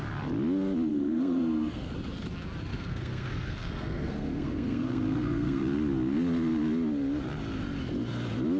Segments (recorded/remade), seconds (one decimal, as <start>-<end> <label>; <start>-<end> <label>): 0.0-0.9 recorded; 0.9-1.9 remade; 1.9-2.7 recorded; 2.7-5.6 remade; 5.6-8.6 recorded